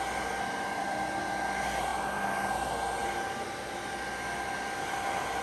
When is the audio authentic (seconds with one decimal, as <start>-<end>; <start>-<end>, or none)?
0.0-5.4